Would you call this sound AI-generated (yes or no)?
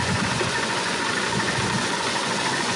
yes